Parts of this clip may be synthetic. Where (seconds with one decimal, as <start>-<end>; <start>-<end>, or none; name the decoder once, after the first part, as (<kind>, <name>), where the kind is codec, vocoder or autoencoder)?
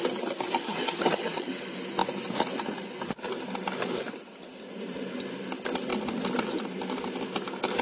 0.6-1.5 (vocoder, HiFi-GAN)